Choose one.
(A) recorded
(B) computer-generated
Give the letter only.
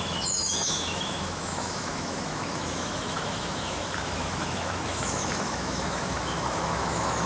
B